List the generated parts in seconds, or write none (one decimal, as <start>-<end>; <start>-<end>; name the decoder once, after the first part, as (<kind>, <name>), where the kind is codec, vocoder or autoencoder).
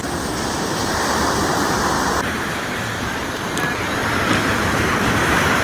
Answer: 0.0-4.0 (vocoder, BigVGAN v2); 5.1-5.6